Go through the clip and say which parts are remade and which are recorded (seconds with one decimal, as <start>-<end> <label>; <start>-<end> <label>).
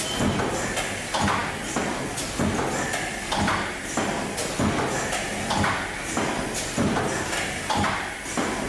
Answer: 0.0-8.7 recorded